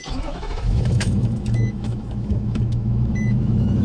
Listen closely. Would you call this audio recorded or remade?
remade